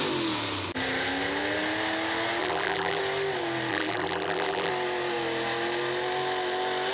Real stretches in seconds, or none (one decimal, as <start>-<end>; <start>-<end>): 0.0-2.4; 3.0-3.7; 4.7-6.9